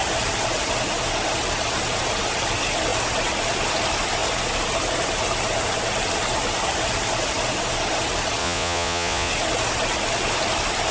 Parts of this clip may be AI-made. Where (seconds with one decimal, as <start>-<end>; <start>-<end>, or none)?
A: 8.4-9.3